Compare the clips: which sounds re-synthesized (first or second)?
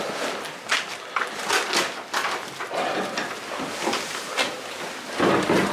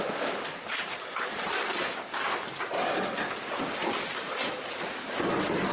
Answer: second